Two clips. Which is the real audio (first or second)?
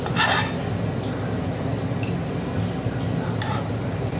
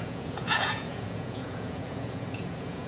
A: first